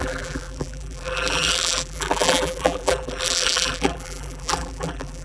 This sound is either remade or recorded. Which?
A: remade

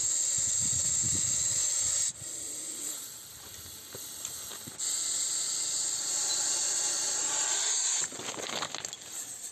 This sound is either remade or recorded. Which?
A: recorded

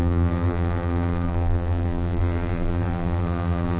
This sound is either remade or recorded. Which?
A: remade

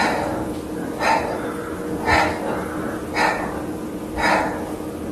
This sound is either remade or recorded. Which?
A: recorded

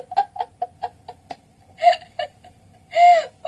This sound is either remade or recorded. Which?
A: recorded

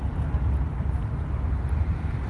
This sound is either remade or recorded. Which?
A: remade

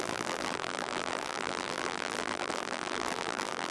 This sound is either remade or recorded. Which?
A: remade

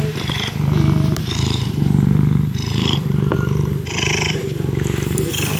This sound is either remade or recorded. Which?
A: remade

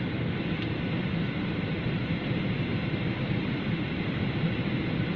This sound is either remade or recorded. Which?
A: remade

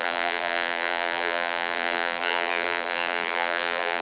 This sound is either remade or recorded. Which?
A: remade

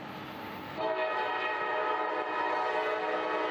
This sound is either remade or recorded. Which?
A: recorded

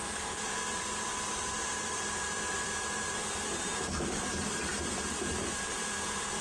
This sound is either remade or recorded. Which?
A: remade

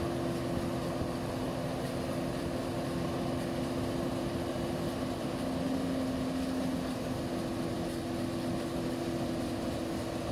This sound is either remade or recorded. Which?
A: recorded